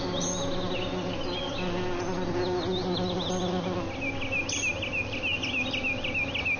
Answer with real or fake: real